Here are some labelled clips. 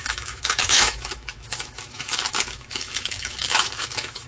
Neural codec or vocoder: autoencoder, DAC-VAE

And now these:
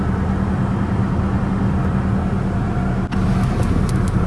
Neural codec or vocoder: none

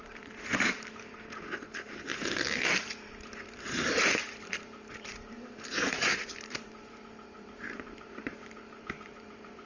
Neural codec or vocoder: vocoder, BigVGAN v2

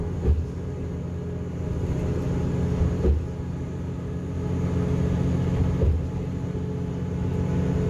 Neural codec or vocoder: none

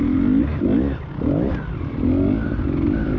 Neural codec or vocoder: none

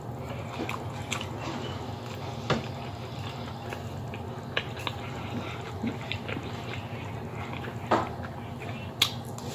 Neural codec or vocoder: none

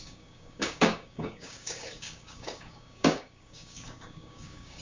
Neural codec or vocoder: codec, DAC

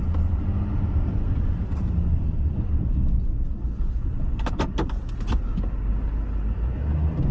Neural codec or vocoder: none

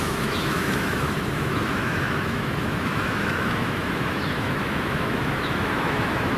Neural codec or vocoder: autoencoder, DAC-VAE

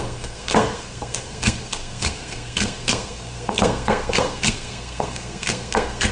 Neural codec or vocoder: codec, SNAC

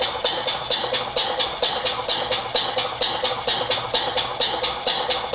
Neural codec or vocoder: none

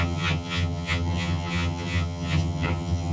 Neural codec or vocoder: vocoder, HiFi-GAN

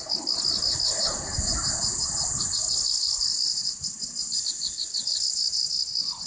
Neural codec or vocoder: none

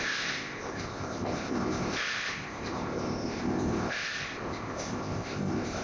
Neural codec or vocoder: codec, ZipCodec